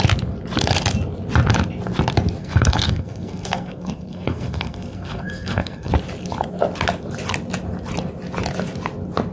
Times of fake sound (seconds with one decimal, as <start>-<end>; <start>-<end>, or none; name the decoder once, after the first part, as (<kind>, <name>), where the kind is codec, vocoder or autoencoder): 2.4-5.9 (codec, SNAC)